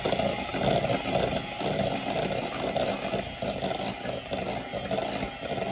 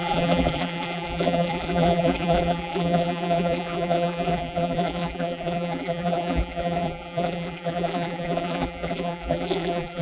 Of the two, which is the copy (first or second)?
second